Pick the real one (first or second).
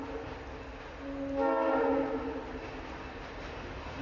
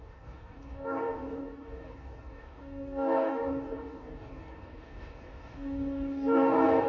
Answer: first